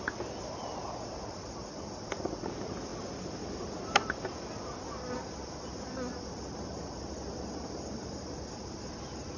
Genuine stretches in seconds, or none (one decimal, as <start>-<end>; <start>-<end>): 0.0-9.4